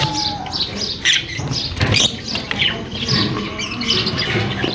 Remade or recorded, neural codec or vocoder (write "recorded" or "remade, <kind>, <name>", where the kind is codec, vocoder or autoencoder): recorded